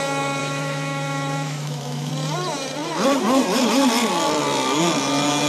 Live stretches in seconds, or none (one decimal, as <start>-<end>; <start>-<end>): 0.0-0.4; 2.1-5.5